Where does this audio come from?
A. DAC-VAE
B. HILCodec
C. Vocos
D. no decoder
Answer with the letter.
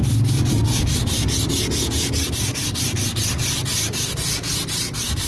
D